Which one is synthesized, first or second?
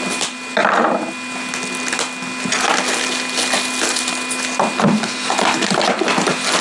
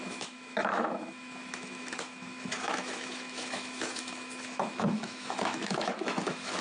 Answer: second